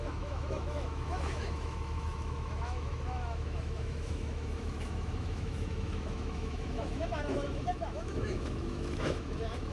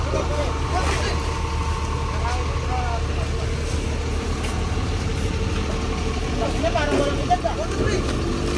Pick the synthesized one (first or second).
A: first